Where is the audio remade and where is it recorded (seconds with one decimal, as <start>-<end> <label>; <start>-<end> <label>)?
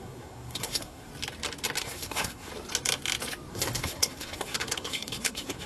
0.0-1.1 remade; 1.1-1.8 recorded; 1.8-2.5 remade; 2.5-3.5 recorded; 3.5-5.7 remade